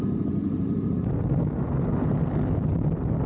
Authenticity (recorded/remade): recorded